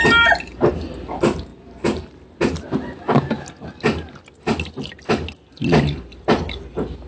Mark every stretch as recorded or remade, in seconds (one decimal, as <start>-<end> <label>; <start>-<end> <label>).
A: 0.0-7.1 recorded